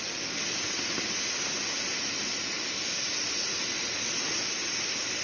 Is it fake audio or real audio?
real